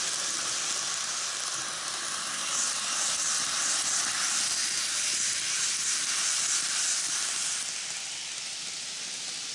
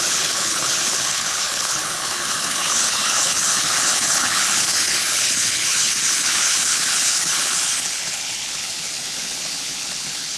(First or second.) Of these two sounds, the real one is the first